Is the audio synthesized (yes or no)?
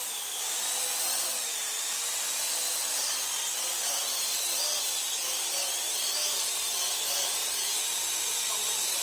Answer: no